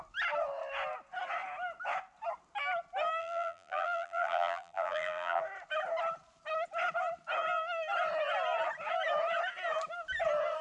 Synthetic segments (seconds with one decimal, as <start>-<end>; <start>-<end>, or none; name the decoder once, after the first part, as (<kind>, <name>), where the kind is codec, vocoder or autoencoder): 3.2-5.4 (vocoder, BigVGAN v2)